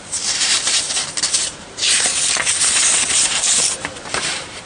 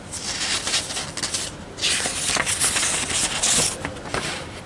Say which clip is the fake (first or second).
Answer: first